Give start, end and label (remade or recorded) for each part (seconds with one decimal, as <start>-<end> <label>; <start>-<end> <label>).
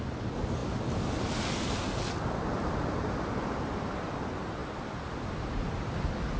0.0-4.6 recorded; 4.6-5.5 remade; 5.5-6.4 recorded